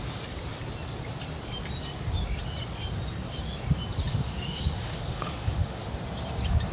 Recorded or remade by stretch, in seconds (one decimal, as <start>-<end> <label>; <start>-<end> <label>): 0.0-4.1 recorded; 4.1-5.9 remade; 5.9-6.7 recorded